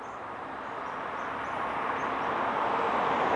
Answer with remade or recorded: recorded